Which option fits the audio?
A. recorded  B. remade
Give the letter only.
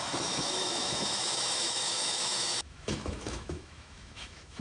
B